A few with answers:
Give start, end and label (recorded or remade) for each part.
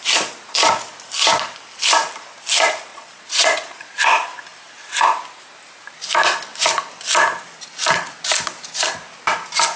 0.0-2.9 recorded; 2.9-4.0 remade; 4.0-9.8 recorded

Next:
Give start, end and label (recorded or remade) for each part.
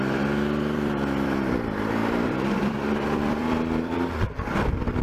0.0-5.0 remade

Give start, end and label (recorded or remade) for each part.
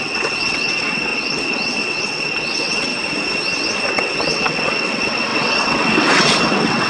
0.0-2.9 remade; 2.9-3.9 recorded; 3.9-6.9 remade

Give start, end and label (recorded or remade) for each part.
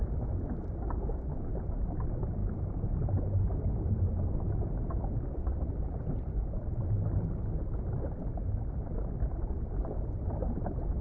0.0-11.0 recorded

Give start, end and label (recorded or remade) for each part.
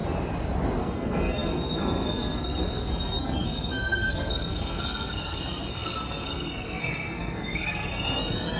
0.0-0.8 recorded; 0.8-8.6 remade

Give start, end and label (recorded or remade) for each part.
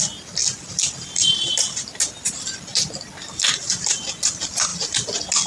0.0-5.5 recorded